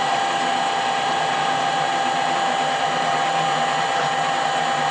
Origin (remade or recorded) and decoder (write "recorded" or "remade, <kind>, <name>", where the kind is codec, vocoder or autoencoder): recorded